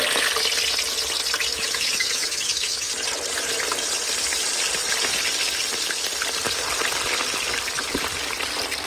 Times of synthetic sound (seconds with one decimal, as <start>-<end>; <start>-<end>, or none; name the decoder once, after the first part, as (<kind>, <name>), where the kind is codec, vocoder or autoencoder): 1.5-2.9 (autoencoder, DAC-VAE)